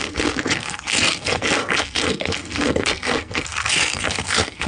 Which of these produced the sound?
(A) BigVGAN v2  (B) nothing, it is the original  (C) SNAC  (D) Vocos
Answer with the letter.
C